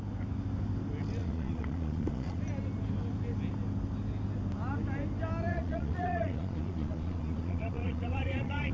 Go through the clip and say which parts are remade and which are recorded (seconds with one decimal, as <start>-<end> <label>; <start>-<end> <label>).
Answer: 0.0-1.2 recorded; 1.2-2.4 remade; 2.4-5.5 recorded; 5.5-8.7 remade